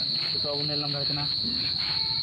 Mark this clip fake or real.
real